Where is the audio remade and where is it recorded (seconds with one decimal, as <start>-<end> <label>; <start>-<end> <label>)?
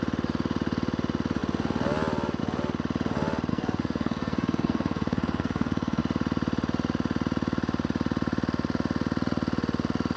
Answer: 0.0-3.5 recorded; 3.5-6.0 remade; 6.0-10.2 recorded